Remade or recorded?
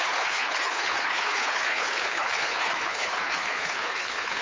remade